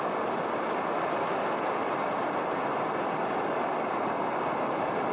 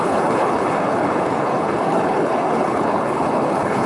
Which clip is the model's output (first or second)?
second